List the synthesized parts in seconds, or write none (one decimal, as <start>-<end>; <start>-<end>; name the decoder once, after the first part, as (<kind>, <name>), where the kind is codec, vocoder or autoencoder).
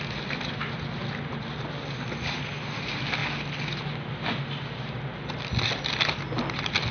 none